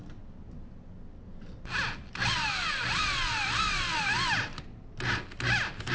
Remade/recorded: recorded